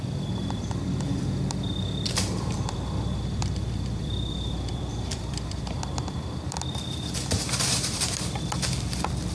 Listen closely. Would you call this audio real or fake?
fake